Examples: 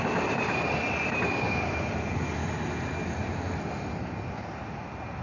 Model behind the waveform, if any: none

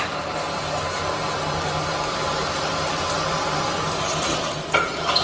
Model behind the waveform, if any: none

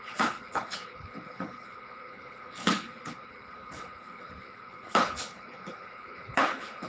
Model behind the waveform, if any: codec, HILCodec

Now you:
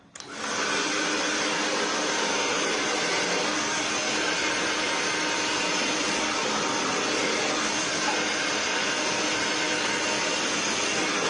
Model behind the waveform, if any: none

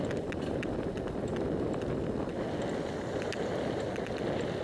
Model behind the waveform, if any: none